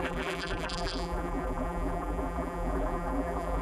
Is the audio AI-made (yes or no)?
yes